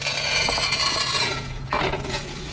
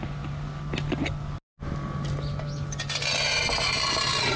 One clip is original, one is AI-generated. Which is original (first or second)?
second